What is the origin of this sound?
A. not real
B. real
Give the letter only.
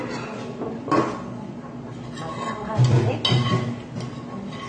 B